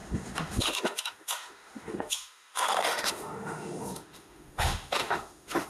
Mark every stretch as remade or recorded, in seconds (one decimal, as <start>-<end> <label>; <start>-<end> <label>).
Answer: 0.0-5.7 remade